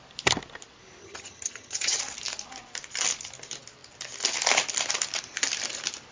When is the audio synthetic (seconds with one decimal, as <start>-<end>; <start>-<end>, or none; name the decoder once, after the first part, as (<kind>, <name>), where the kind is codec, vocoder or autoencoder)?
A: 1.0-2.0 (vocoder, HiFi-GAN)